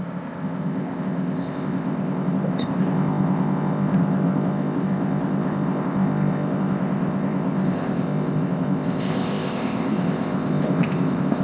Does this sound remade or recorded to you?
remade